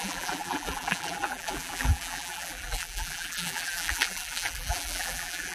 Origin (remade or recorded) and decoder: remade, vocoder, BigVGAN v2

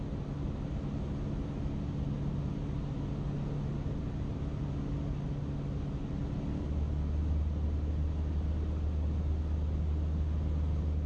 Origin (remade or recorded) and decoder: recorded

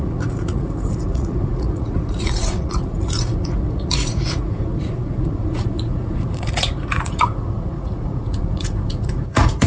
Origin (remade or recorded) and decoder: remade, vocoder, Vocos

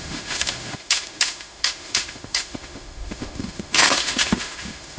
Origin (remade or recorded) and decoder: remade, autoencoder, DAC-VAE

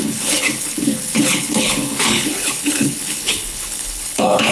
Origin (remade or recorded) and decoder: remade, codec, HILCodec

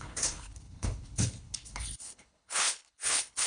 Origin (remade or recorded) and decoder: remade, codec, HILCodec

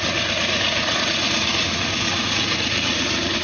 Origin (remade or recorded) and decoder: remade, vocoder, Vocos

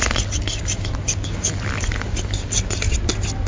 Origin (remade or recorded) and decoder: recorded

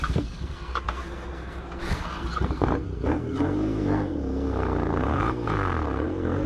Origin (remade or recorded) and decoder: remade, codec, SNAC